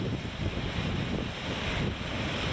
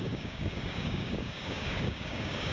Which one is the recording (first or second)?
first